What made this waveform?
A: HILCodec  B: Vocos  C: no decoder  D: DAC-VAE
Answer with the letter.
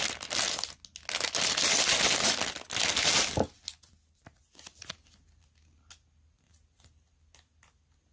C